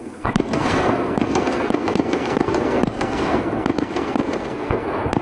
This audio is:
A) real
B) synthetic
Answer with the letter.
B